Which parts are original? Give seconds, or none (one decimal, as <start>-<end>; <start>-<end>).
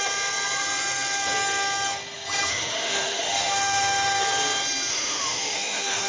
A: 0.0-2.5; 4.2-4.9